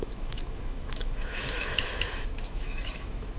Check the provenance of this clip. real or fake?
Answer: fake